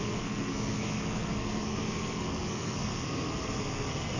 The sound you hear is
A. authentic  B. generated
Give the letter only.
B